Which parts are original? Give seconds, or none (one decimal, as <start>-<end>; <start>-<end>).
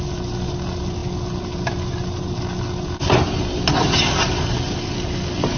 0.0-5.6